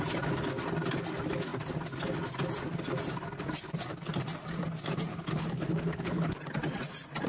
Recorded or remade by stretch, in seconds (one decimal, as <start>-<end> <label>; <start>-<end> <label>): 0.0-5.1 recorded; 5.1-6.4 remade; 6.4-7.3 recorded